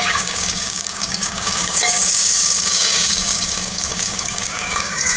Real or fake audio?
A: fake